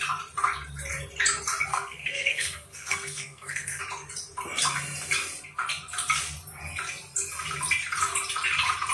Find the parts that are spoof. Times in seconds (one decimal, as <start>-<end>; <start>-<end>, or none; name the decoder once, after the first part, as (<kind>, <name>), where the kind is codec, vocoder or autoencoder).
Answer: 1.7-3.8 (codec, SNAC)